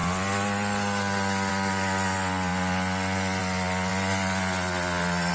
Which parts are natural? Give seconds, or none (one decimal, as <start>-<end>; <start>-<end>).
0.0-5.3